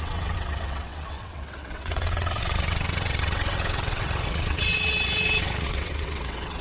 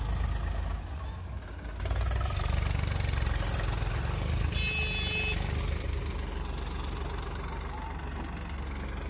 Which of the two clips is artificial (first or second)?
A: first